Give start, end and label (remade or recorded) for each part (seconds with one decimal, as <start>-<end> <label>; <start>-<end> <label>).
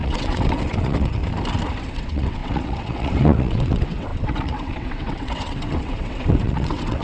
0.0-1.2 remade; 1.2-1.8 recorded; 1.8-7.0 remade